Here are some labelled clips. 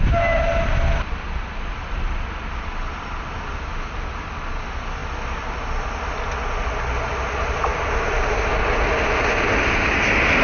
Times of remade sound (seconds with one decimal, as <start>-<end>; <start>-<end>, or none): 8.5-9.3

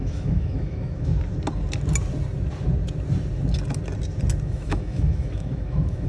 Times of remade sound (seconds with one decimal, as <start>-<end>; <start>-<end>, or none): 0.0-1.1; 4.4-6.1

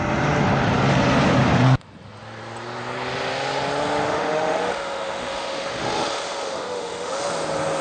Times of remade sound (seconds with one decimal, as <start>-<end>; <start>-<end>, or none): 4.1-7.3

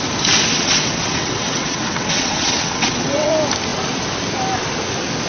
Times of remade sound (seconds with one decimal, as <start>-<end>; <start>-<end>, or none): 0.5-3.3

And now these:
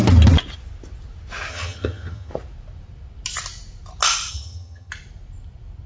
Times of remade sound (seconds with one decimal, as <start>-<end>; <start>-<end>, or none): 1.5-2.3; 4.3-4.9

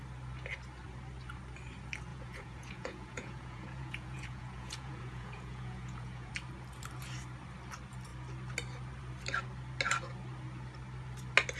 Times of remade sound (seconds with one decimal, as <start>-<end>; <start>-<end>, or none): 2.1-6.3

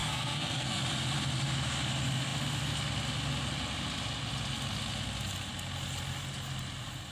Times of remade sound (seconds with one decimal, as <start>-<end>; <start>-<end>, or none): 0.0-0.8

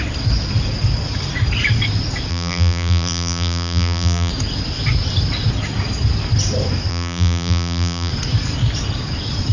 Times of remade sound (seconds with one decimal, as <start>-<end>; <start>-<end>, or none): 2.3-4.3; 6.9-8.1